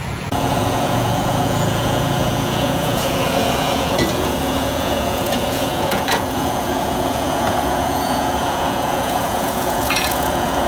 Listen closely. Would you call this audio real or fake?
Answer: fake